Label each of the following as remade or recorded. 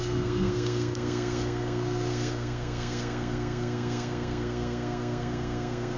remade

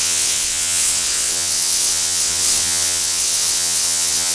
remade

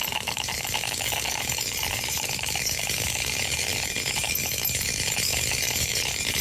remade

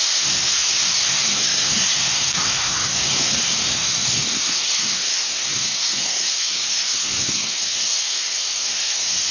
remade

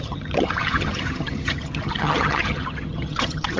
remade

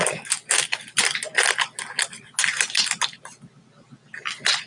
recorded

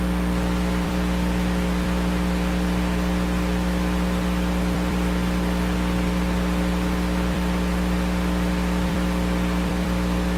remade